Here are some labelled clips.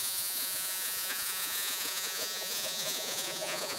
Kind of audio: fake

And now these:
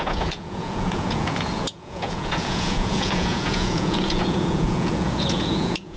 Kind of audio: fake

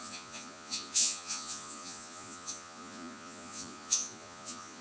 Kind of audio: fake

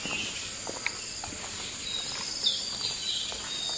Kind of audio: real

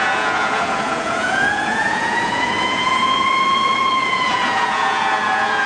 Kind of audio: fake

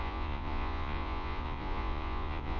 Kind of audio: fake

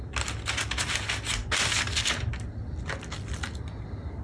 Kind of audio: real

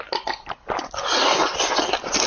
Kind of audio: real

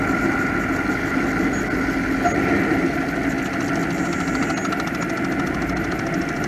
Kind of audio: real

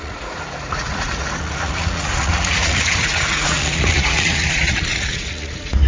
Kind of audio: fake